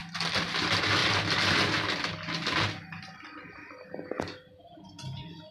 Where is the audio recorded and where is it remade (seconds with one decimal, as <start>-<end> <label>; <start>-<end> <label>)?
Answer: 0.0-5.5 recorded